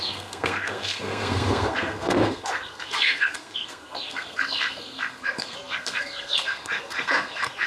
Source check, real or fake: fake